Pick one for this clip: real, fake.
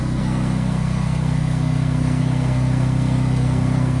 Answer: fake